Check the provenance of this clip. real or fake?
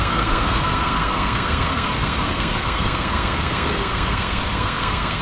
fake